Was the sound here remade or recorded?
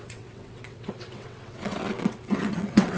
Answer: remade